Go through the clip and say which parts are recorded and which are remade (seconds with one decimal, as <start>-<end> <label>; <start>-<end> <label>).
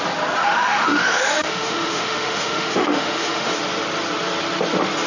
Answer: 0.0-0.4 recorded; 0.4-3.5 remade; 3.5-5.1 recorded